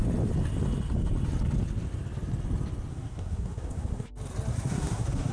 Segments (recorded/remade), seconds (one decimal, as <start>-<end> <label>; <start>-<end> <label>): 0.0-2.9 recorded; 2.9-4.1 remade; 4.1-4.5 recorded; 4.5-5.3 remade